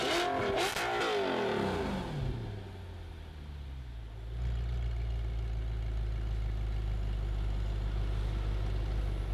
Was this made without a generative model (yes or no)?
yes